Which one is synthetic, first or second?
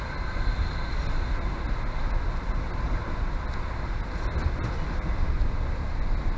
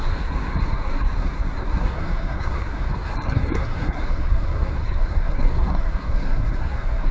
second